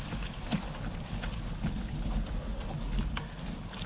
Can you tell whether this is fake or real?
real